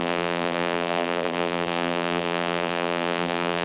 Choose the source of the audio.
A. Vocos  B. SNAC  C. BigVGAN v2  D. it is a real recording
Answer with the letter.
C